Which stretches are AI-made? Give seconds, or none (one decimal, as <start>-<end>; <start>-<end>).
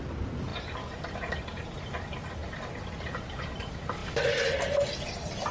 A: none